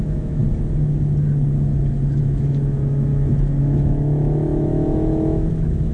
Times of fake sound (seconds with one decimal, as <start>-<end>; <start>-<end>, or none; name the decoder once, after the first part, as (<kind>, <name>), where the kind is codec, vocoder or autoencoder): 0.0-0.4 (autoencoder, DAC-VAE); 2.2-3.1; 3.6-5.9